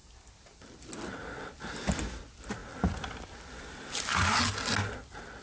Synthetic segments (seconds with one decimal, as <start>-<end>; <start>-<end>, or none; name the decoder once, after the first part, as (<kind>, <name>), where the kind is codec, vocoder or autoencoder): none